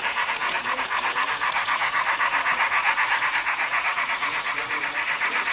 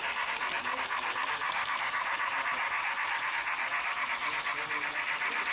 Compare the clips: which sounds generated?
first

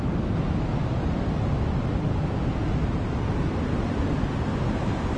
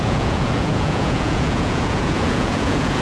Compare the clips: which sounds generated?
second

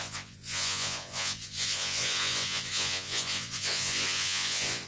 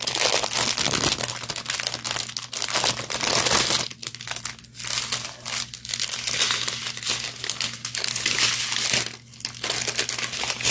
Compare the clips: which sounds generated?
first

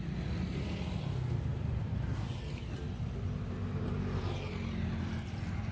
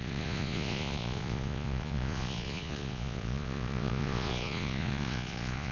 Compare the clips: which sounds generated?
second